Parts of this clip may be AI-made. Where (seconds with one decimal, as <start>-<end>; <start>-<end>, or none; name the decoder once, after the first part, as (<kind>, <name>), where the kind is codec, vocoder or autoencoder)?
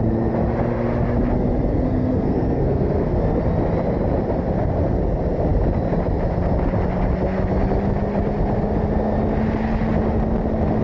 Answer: 1.7-3.2 (codec, SNAC)